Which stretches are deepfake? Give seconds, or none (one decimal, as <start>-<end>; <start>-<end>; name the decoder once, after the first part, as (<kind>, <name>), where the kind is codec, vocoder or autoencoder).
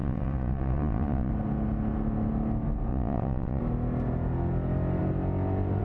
0.0-1.3 (vocoder, Vocos); 2.9-3.6